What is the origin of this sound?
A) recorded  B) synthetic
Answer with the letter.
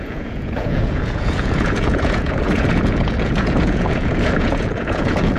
B